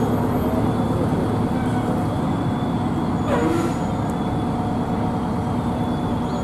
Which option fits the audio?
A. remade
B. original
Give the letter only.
B